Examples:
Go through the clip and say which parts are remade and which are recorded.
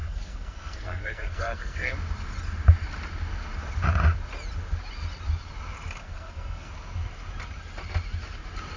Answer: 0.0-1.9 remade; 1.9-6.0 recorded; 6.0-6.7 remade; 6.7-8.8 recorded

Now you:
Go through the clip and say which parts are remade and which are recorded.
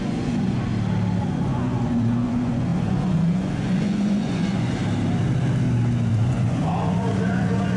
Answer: 0.0-0.7 remade; 0.7-1.2 recorded; 1.2-4.8 remade; 4.8-6.1 recorded; 6.1-7.8 remade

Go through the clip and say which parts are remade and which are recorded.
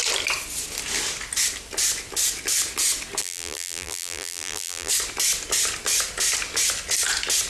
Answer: 0.0-3.2 recorded; 3.2-4.9 remade; 4.9-7.5 recorded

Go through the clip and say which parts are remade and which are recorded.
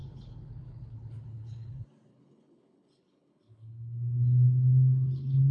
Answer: 0.0-1.7 remade; 1.7-2.1 recorded; 2.1-5.5 remade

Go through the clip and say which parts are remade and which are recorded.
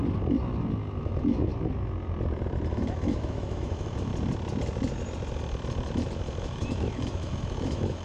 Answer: 0.0-1.0 recorded; 1.0-1.5 remade; 1.5-2.7 recorded; 2.7-4.1 remade; 4.1-6.4 recorded; 6.4-8.0 remade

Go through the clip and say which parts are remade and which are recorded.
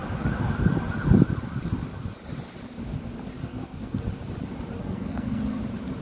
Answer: 0.0-3.4 recorded; 3.4-4.0 remade; 4.0-4.8 recorded; 4.8-5.6 remade; 5.6-6.0 recorded